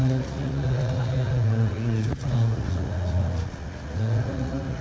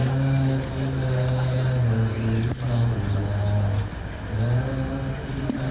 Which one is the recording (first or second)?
second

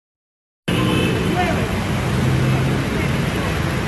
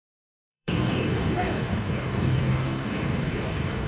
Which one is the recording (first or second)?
first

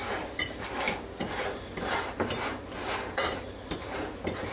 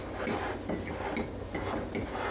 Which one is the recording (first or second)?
second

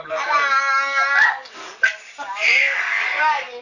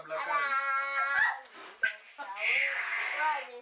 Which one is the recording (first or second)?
second